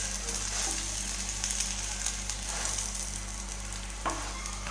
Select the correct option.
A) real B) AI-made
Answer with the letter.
A